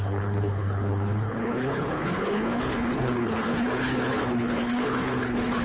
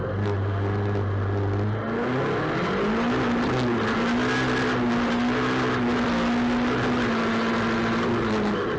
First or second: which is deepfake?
first